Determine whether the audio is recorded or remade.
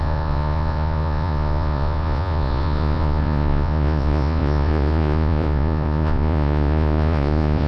remade